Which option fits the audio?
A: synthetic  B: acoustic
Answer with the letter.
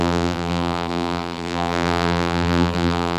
A